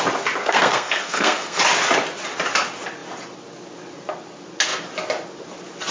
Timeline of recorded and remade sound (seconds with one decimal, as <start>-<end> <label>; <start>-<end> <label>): 0.0-0.4 recorded; 0.4-1.6 remade; 1.6-5.9 recorded